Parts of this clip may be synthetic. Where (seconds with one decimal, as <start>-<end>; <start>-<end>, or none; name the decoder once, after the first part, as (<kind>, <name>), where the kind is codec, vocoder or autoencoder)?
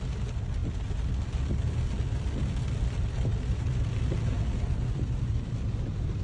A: none